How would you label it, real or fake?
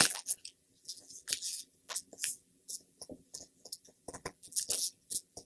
fake